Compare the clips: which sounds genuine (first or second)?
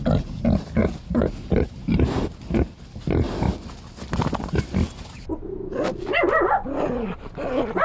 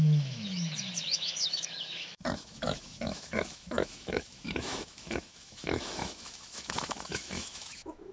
first